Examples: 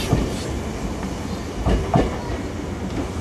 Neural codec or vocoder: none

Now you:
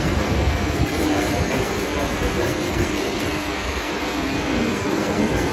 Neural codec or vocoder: codec, SNAC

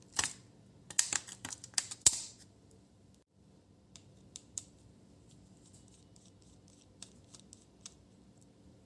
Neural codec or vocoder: none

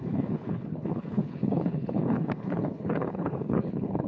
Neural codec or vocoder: codec, HILCodec